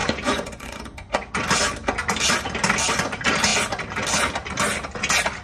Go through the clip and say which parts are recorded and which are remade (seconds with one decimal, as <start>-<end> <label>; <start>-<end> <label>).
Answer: 0.0-1.3 remade; 1.3-5.4 recorded